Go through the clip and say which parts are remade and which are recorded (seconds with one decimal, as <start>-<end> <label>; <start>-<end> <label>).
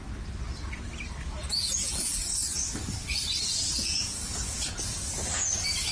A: 0.0-1.5 recorded; 1.5-2.1 remade; 2.1-3.8 recorded; 3.8-5.5 remade; 5.5-5.9 recorded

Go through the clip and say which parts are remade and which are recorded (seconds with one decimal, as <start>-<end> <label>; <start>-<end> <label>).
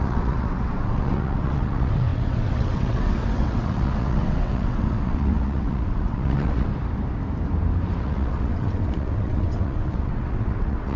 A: 0.0-6.7 remade; 6.7-8.0 recorded; 8.0-11.0 remade